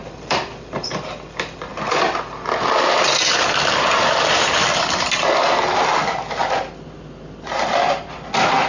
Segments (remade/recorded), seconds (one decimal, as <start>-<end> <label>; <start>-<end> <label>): 0.0-8.7 recorded